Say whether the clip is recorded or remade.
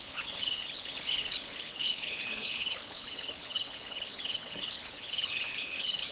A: remade